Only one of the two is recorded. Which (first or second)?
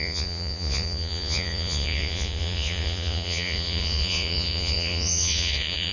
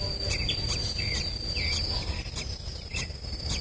second